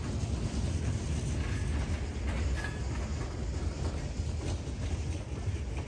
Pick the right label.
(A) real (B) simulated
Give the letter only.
A